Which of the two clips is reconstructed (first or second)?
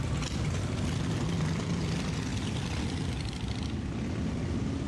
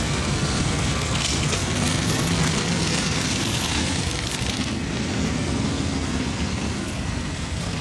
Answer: second